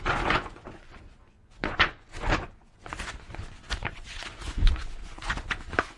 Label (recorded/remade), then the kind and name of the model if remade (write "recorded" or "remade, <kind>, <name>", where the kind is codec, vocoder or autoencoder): remade, vocoder, Vocos